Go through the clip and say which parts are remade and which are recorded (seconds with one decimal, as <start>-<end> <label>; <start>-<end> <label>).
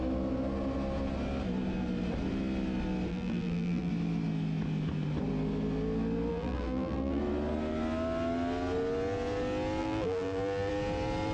0.0-3.1 recorded; 3.1-3.9 remade; 3.9-6.3 recorded; 6.3-7.2 remade; 7.2-9.8 recorded; 9.8-10.7 remade; 10.7-11.3 recorded